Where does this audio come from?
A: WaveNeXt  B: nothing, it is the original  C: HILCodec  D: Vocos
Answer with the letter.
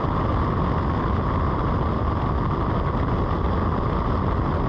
B